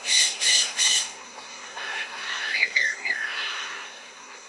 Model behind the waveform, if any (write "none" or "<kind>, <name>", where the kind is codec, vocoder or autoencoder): codec, SNAC